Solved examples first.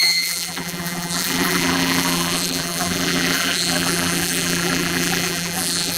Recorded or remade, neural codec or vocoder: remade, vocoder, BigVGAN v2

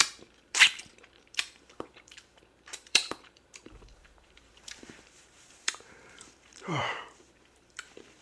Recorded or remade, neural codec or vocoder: remade, vocoder, BigVGAN v2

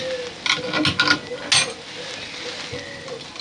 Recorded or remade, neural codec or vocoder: recorded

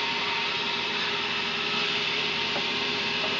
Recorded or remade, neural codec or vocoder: remade, vocoder, BigVGAN v2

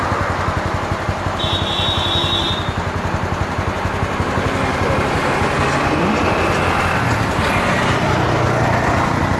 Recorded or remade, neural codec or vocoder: recorded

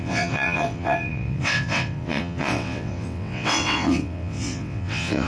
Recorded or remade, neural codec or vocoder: remade, vocoder, WaveNeXt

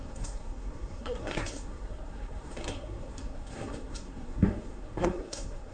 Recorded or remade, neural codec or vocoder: remade, codec, SNAC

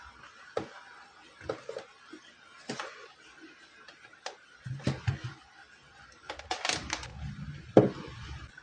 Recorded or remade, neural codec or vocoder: recorded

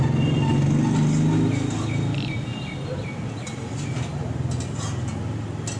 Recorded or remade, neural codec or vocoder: recorded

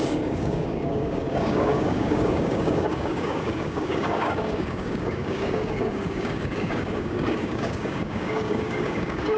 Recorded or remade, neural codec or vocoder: remade, codec, DAC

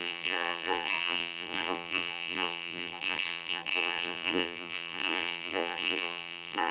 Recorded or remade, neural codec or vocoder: remade, vocoder, BigVGAN v2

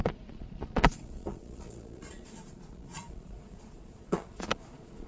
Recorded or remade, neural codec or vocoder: remade, vocoder, Vocos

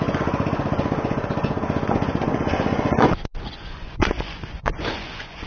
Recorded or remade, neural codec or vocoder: remade, vocoder, Vocos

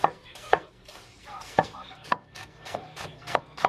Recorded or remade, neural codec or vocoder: remade, codec, SNAC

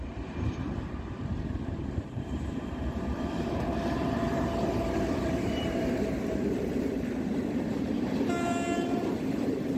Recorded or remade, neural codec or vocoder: remade, vocoder, BigVGAN v2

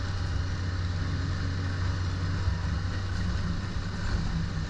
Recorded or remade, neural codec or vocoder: recorded